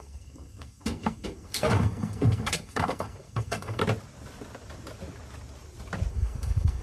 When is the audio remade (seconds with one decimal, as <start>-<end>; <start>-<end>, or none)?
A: 0.0-3.8; 6.1-6.8